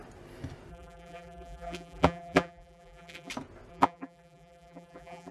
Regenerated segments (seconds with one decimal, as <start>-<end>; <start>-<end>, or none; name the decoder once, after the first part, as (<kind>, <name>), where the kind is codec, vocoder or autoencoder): 0.7-3.3 (vocoder, BigVGAN v2); 3.7-5.3